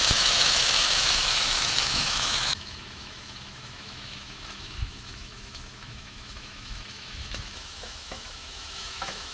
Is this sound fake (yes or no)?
yes